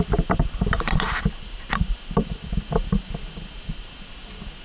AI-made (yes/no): no